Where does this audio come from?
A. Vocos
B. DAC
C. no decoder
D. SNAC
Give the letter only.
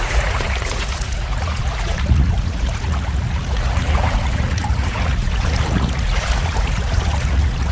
A